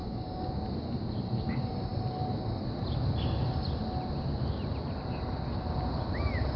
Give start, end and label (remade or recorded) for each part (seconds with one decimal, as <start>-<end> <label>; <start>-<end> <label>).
0.0-0.5 remade; 0.5-6.6 recorded